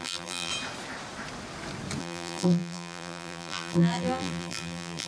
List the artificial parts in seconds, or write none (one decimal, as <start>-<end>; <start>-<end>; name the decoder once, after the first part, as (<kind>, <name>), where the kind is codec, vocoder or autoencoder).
0.0-0.5 (vocoder, BigVGAN v2); 2.0-5.1